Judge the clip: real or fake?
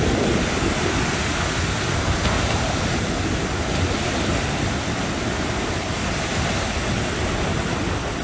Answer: real